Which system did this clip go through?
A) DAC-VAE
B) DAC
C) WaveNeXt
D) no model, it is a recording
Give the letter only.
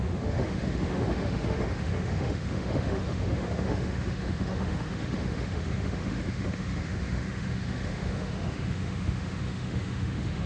A